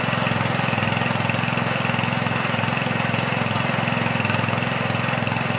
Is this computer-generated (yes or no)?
no